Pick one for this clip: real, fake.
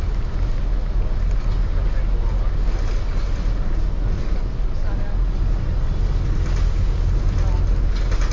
real